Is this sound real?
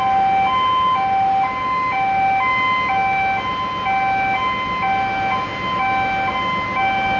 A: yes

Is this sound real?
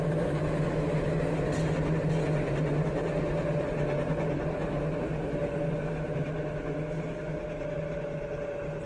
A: yes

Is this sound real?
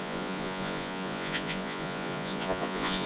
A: no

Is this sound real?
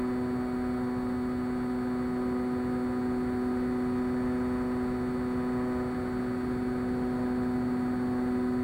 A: yes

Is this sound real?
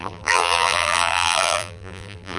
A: no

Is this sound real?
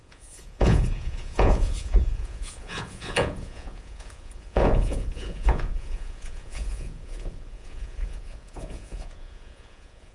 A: no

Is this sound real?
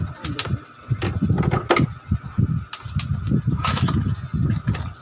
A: yes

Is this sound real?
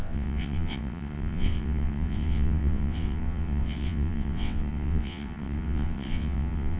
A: no